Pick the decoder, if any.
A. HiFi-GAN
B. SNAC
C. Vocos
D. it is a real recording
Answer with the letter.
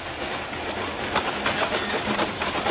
D